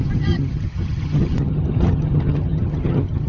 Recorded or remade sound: remade